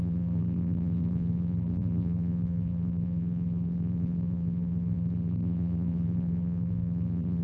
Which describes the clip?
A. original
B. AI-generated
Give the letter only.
B